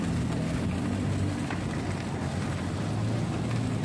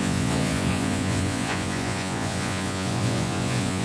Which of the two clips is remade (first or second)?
second